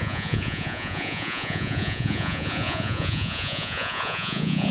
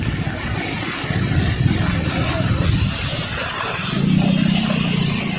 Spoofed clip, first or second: first